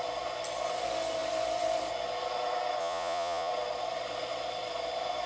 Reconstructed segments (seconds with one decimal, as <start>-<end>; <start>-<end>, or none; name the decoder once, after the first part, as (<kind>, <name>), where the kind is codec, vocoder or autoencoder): 2.8-3.5 (vocoder, Vocos)